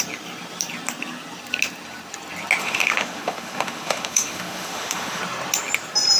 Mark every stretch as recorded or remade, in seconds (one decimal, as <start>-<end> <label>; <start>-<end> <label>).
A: 0.0-2.6 recorded; 2.6-5.2 remade; 5.2-6.2 recorded